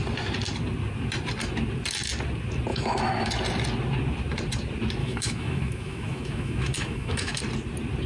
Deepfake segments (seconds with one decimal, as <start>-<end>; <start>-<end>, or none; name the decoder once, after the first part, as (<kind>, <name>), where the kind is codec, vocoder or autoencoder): 2.7-3.3 (autoencoder, DAC-VAE); 5.0-7.4